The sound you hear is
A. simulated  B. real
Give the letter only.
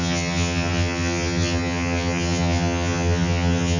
A